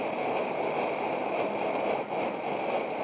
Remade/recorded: recorded